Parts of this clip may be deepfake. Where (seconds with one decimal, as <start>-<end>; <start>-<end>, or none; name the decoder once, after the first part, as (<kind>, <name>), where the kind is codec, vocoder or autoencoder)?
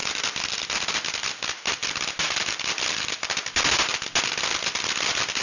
0.0-3.2 (vocoder, BigVGAN v2)